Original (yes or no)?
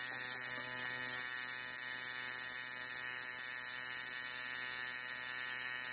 yes